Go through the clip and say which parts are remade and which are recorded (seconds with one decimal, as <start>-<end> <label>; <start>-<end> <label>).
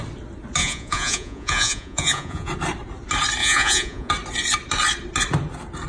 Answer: 0.0-0.6 recorded; 0.6-2.5 remade; 2.5-3.4 recorded; 3.4-4.1 remade; 4.1-5.9 recorded